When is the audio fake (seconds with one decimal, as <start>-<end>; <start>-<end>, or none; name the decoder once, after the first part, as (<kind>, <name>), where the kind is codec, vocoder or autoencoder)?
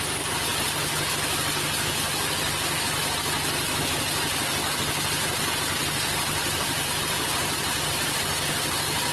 6.4-8.2 (vocoder, BigVGAN v2)